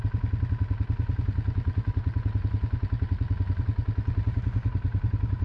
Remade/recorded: recorded